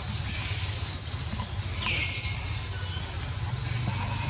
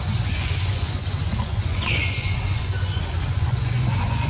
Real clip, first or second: first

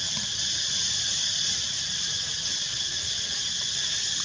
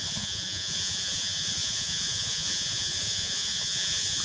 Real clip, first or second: first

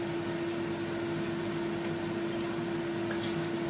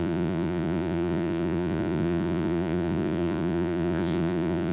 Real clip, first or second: first